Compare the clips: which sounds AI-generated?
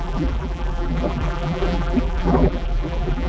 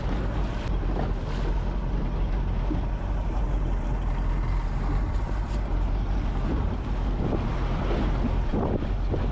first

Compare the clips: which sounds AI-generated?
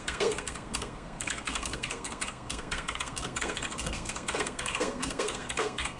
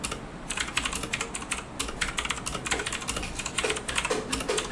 first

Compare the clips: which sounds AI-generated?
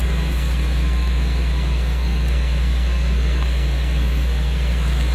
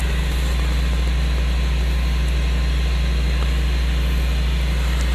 first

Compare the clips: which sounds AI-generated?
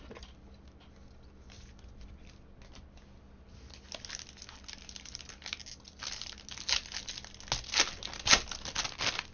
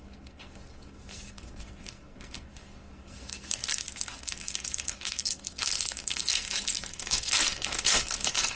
second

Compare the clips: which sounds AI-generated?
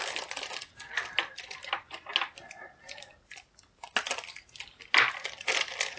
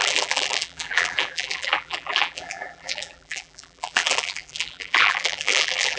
second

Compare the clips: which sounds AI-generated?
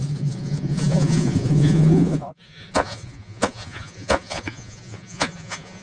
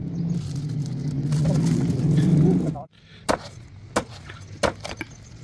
first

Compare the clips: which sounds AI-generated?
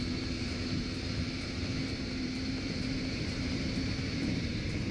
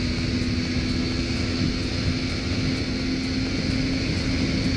first